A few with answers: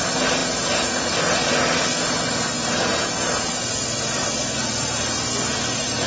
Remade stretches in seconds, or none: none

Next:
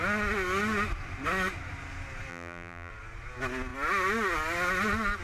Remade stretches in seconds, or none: 2.3-2.9 (vocoder, BigVGAN v2)

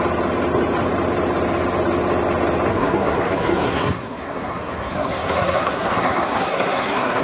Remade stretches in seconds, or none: 2.7-7.2 (codec, SNAC)

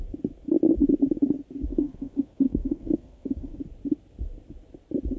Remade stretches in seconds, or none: 1.7-3.6 (codec, SNAC)

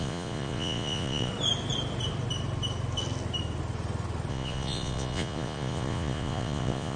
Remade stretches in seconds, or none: 0.0-1.3 (vocoder, Vocos); 4.3-7.0